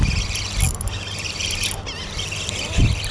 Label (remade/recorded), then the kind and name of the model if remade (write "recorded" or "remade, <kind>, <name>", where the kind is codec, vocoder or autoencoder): recorded